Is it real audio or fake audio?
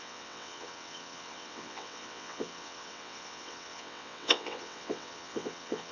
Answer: fake